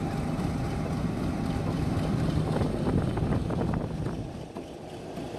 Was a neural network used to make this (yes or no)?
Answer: no